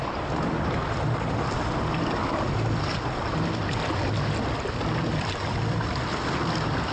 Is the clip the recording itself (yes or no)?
yes